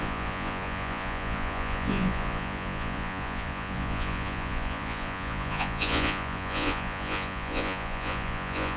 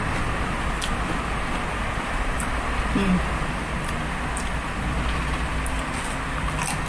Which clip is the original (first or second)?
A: second